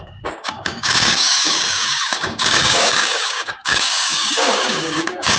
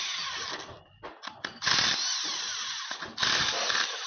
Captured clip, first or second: second